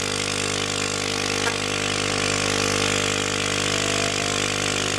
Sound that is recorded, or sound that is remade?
recorded